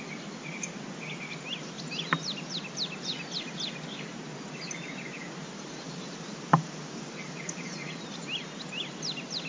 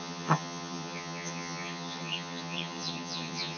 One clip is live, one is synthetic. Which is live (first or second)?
first